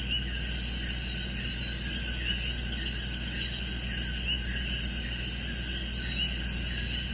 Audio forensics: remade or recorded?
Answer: recorded